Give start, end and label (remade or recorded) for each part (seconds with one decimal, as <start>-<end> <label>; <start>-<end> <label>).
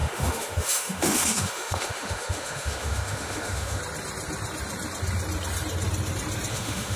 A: 0.0-3.8 remade; 3.8-6.5 recorded; 6.5-7.0 remade